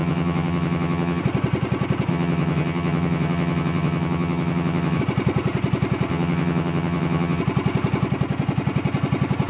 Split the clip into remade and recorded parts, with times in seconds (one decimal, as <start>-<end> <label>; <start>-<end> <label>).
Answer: 0.0-1.2 remade; 1.2-2.1 recorded; 2.1-5.0 remade; 5.0-6.1 recorded; 6.1-7.4 remade; 7.4-9.5 recorded